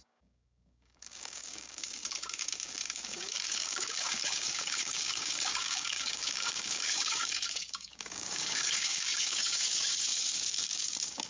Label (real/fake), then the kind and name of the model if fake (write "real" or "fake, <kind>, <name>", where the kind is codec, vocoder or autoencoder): fake, codec, DAC